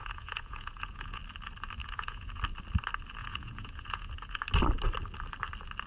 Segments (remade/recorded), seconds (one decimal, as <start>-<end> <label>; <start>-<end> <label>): 0.0-1.2 remade; 1.2-1.8 recorded; 1.8-2.4 remade; 2.4-3.2 recorded; 3.2-4.4 remade; 4.4-5.9 recorded